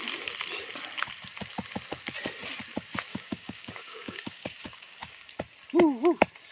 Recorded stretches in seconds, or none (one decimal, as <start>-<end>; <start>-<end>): 0.0-3.1; 5.4-6.5